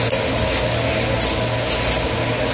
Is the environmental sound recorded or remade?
recorded